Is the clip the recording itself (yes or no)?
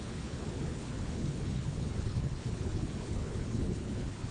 no